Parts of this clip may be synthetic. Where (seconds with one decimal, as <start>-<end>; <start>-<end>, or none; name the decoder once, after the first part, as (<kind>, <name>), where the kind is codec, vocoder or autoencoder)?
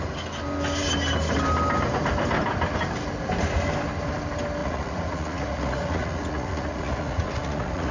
4.6-7.9 (vocoder, Vocos)